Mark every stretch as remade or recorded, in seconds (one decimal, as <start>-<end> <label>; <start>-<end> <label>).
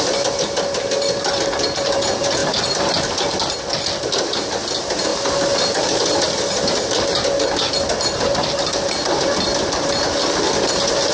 0.0-2.4 recorded; 2.4-2.9 remade; 2.9-11.1 recorded